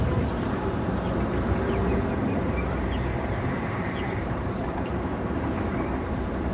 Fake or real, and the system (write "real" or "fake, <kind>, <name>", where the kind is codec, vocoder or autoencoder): fake, vocoder, BigVGAN v2